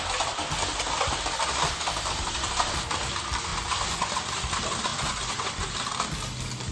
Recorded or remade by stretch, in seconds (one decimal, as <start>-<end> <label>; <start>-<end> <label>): 0.0-3.5 recorded; 3.5-4.1 remade; 4.1-4.9 recorded; 4.9-5.7 remade; 5.7-6.7 recorded